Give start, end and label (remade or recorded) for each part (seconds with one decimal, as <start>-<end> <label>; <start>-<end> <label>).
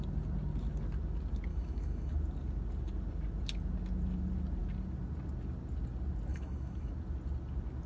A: 0.0-1.5 recorded; 1.5-2.1 remade; 2.1-6.3 recorded; 6.3-6.9 remade; 6.9-7.9 recorded